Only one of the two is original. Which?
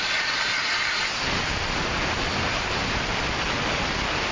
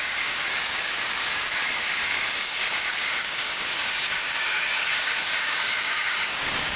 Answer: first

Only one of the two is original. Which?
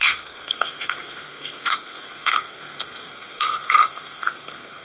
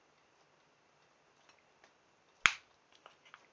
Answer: second